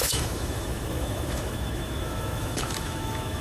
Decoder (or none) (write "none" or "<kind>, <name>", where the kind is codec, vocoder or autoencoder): autoencoder, DAC-VAE